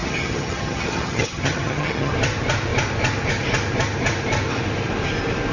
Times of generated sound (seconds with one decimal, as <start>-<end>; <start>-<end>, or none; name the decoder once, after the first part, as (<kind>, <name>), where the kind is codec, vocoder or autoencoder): 0.0-2.1 (vocoder, HiFi-GAN)